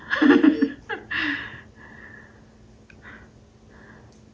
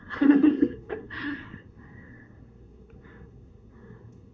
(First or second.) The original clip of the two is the first